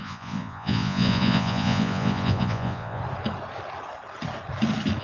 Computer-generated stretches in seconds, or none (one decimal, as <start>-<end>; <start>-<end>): 0.0-3.0